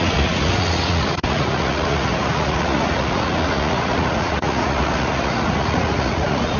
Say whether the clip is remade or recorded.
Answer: remade